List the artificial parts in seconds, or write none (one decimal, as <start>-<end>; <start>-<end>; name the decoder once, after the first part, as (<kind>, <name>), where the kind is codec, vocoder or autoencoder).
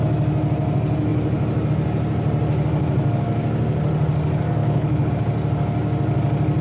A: 4.6-5.1 (codec, HILCodec)